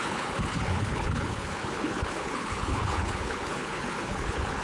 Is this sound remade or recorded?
remade